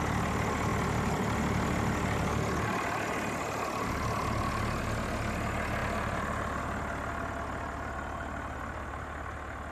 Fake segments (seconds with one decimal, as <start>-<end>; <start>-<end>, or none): none

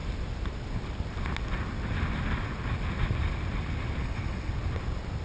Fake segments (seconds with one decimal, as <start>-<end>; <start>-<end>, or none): 4.0-4.5